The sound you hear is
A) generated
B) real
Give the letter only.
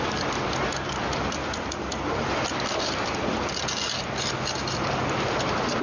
A